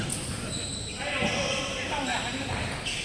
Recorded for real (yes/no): yes